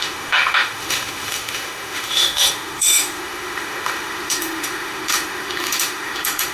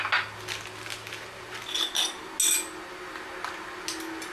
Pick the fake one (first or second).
first